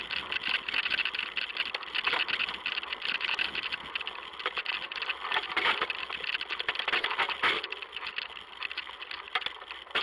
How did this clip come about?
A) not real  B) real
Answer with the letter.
B